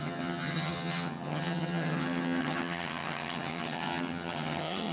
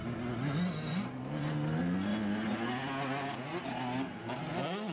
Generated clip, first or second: first